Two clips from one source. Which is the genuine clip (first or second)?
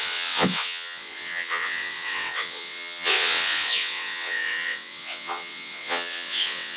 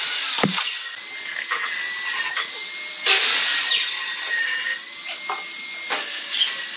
second